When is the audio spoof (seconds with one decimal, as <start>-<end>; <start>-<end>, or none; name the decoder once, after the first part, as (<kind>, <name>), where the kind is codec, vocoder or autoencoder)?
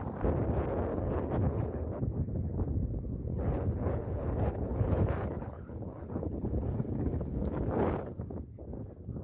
0.9-2.0 (codec, HILCodec); 3.3-8.2